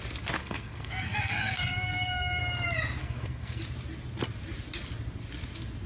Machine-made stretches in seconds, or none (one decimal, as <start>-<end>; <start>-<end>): 0.4-2.4; 3.0-3.6